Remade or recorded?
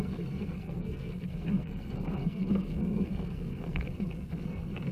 remade